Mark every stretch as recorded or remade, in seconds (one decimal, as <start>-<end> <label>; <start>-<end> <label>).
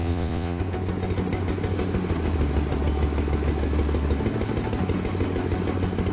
0.0-0.6 remade; 0.6-6.1 recorded